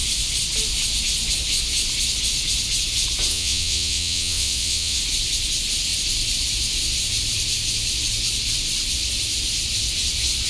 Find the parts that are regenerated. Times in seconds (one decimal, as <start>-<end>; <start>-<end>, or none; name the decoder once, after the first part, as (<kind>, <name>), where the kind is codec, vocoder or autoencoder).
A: 3.3-5.0 (vocoder, WaveNeXt)